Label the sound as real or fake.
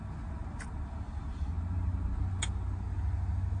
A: real